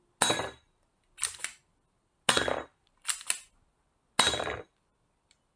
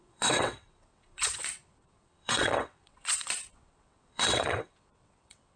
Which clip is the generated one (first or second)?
second